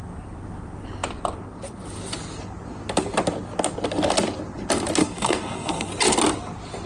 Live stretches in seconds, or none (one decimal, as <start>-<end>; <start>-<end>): 0.0-5.0; 5.9-6.9